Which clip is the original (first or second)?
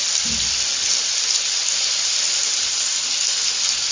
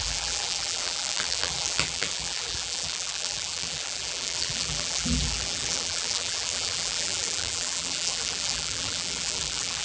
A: first